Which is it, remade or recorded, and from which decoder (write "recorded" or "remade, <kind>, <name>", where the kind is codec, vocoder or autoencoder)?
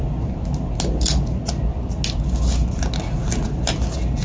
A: recorded